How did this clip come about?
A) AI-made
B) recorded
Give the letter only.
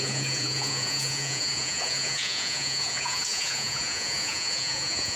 A